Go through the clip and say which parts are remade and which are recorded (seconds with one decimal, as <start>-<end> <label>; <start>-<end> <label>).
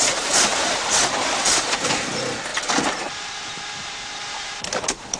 0.0-5.2 remade